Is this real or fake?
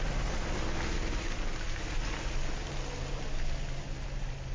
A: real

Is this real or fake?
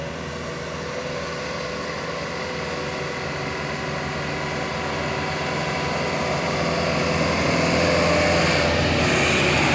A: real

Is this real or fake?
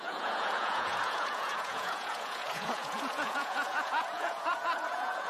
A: fake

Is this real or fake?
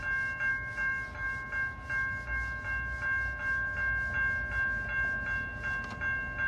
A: real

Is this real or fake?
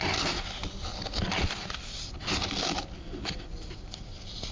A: real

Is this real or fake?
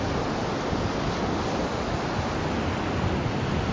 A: real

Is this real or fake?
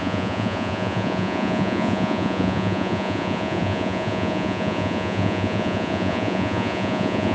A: fake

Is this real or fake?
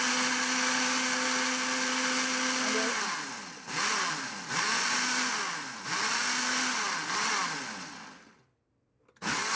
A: real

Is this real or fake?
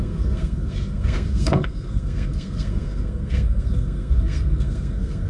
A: fake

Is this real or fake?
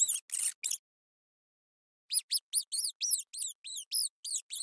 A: real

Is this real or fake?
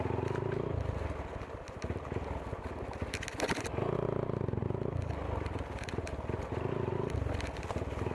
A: real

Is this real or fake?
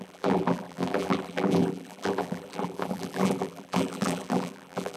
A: fake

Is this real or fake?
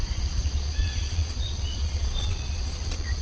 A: fake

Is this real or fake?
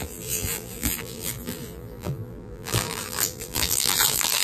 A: fake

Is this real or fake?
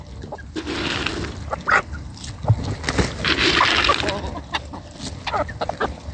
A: real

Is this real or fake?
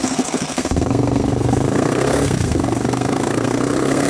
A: fake